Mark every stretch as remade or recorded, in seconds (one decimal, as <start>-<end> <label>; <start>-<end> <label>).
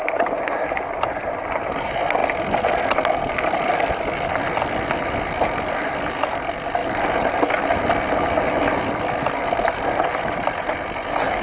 0.0-11.4 recorded